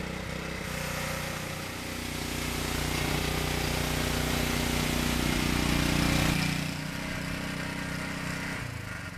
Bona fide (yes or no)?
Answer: yes